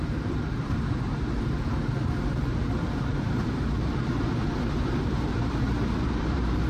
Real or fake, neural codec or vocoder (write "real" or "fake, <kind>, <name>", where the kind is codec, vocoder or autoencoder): fake, vocoder, BigVGAN v2